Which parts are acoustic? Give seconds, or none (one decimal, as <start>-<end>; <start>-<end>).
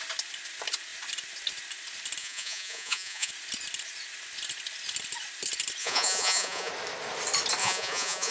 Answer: 0.0-2.2; 3.3-5.8; 6.7-7.6